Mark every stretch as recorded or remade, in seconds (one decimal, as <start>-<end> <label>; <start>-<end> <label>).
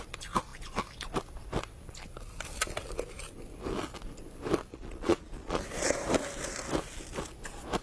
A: 0.0-4.7 recorded; 4.7-5.6 remade; 5.6-7.8 recorded